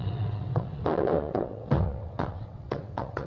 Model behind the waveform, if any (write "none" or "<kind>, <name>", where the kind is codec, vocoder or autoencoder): vocoder, WaveNeXt